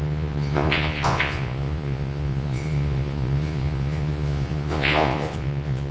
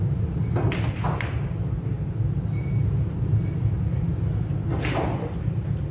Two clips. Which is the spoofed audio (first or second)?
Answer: first